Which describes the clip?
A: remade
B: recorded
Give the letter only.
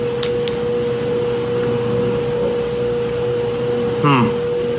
B